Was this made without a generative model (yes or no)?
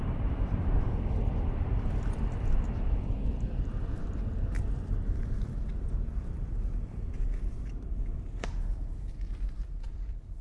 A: no